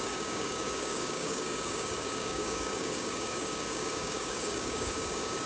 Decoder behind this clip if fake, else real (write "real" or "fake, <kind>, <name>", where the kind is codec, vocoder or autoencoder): fake, codec, DAC